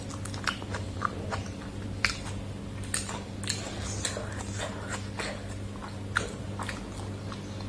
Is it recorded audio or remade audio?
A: recorded